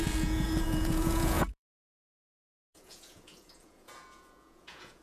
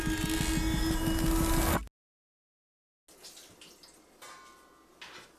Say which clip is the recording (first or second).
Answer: second